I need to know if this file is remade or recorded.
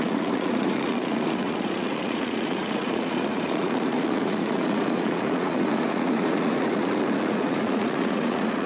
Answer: remade